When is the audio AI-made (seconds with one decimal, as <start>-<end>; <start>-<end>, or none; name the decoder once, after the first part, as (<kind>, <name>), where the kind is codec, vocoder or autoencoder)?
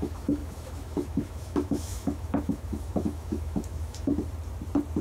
0.0-4.1 (autoencoder, DAC-VAE)